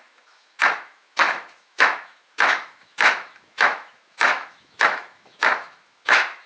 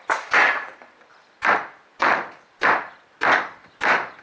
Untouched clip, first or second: second